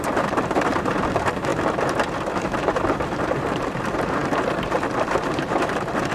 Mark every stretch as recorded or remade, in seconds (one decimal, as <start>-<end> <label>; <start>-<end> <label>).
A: 0.0-1.5 remade; 1.5-2.3 recorded; 2.3-6.1 remade